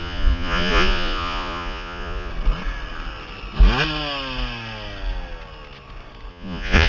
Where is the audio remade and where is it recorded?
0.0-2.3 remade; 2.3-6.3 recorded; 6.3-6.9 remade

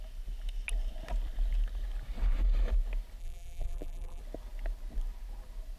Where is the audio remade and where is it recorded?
0.0-3.2 recorded; 3.2-4.2 remade; 4.2-5.8 recorded

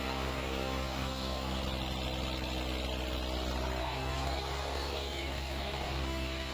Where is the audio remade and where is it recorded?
0.0-1.6 remade; 1.6-3.8 recorded; 3.8-6.5 remade

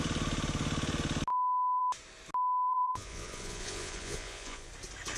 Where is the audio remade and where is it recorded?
0.0-2.7 recorded; 2.7-4.7 remade; 4.7-5.2 recorded